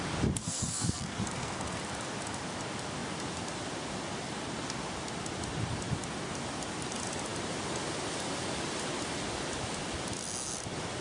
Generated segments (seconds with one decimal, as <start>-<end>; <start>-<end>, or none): 0.4-1.8